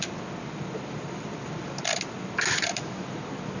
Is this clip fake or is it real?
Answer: real